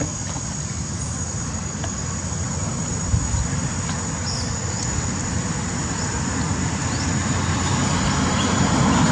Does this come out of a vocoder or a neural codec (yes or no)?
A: no